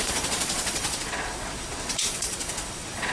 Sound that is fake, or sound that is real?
fake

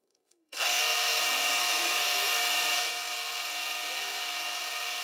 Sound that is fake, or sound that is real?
fake